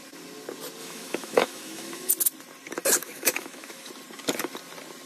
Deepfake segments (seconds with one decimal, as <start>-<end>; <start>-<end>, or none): 0.8-2.1; 3.0-3.9